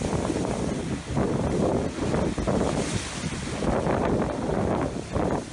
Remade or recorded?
recorded